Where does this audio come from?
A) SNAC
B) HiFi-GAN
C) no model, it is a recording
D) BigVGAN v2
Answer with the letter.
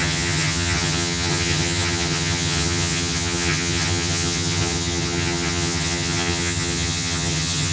B